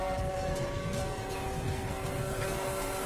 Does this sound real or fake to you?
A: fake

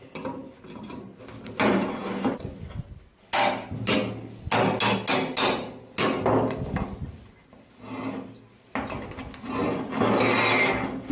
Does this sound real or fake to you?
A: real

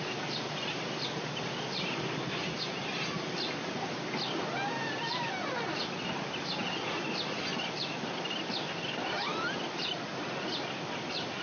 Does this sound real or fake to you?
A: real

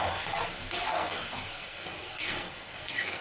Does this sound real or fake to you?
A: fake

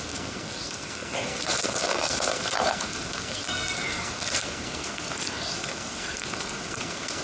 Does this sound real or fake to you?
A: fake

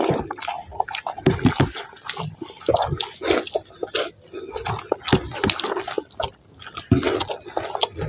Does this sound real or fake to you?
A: real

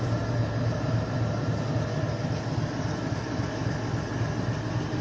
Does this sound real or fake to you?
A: real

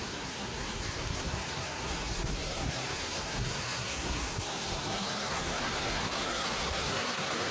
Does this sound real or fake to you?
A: fake